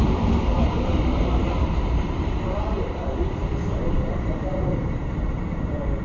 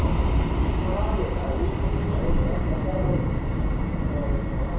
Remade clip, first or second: first